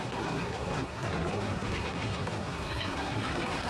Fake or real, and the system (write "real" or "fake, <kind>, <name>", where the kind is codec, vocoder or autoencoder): fake, codec, SNAC